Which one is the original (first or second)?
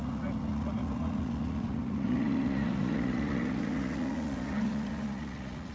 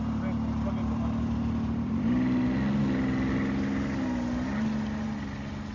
second